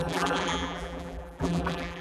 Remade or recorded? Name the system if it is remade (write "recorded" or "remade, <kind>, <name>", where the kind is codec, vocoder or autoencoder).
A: remade, vocoder, BigVGAN v2